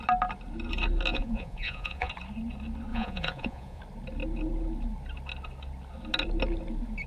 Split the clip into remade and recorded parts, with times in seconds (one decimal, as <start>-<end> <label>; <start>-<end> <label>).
0.0-1.1 recorded; 1.1-2.1 remade; 2.1-2.9 recorded; 2.9-3.8 remade; 3.8-7.1 recorded